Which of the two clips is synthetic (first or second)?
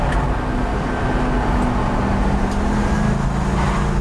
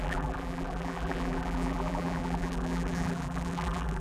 second